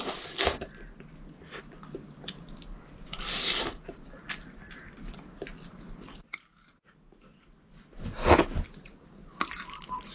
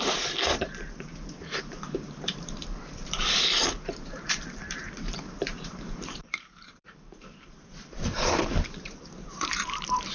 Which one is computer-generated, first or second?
second